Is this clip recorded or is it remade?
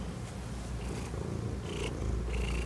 recorded